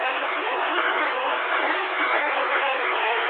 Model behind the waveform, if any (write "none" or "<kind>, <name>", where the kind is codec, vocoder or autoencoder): codec, SNAC